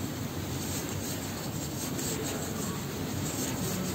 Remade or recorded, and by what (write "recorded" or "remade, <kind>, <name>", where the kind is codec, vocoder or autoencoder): recorded